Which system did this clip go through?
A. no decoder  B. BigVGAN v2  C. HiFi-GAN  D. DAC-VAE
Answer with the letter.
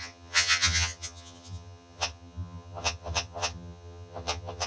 C